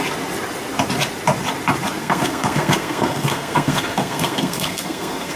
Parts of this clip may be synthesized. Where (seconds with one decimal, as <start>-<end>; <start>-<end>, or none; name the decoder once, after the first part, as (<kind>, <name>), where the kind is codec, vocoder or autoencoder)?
2.0-5.4 (codec, SNAC)